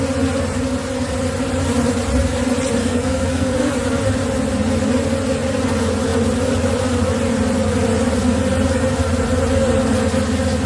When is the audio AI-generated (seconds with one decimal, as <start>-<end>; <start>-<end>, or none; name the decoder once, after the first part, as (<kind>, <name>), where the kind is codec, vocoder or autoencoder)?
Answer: 2.8-3.7 (codec, SNAC)